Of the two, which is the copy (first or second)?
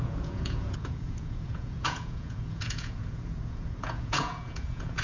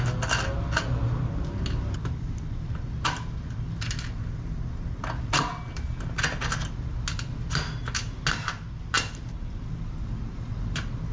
first